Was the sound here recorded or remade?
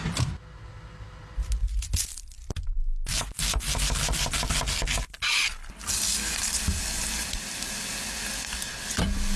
recorded